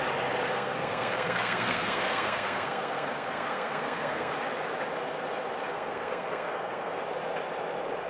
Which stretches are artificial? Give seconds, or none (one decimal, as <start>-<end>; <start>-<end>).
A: 0.5-4.3; 5.7-7.0